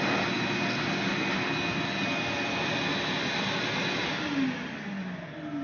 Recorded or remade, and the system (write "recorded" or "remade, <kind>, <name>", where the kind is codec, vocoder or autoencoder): recorded